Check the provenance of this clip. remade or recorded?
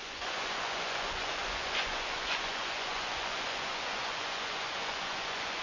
remade